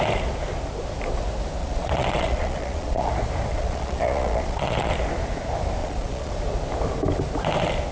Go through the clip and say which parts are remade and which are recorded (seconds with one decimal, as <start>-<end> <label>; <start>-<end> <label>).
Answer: 0.0-1.6 recorded; 1.6-3.1 remade; 3.1-3.5 recorded; 3.5-4.9 remade; 4.9-5.8 recorded; 5.8-6.3 remade; 6.3-7.9 recorded